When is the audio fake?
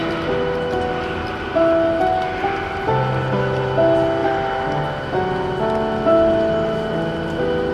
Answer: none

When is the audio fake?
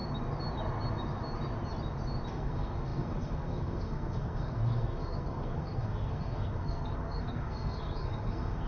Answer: 2.3-8.7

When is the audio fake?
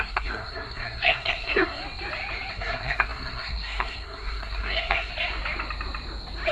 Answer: 0.0-1.8; 2.5-5.1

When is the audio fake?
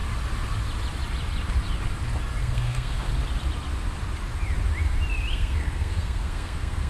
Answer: 2.4-3.1; 5.3-6.9